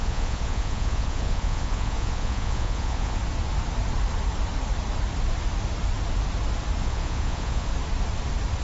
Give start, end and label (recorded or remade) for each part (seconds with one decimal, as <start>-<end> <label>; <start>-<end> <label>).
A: 0.0-3.2 remade; 3.2-6.8 recorded; 6.8-7.7 remade; 7.7-8.6 recorded